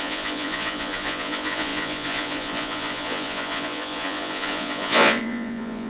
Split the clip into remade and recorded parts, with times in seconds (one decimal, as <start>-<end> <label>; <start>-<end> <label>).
0.0-5.9 remade